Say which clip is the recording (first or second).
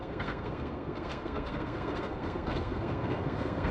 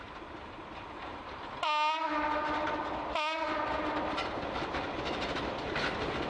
second